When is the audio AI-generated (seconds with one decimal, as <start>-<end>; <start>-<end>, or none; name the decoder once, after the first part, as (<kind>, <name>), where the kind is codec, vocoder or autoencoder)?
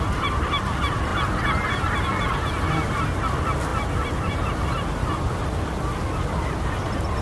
1.1-1.7 (vocoder, BigVGAN v2)